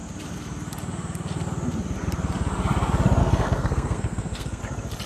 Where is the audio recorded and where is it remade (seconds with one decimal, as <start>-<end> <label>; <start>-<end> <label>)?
0.0-3.2 recorded; 3.2-4.6 remade; 4.6-5.1 recorded